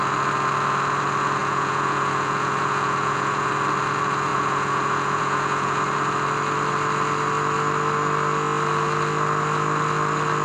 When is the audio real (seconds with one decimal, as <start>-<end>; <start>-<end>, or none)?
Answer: 0.0-1.4; 3.5-4.3; 5.8-10.4